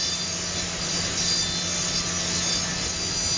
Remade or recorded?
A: recorded